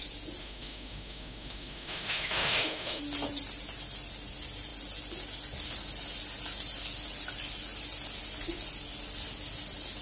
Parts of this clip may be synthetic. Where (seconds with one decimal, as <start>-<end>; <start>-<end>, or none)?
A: 0.4-3.0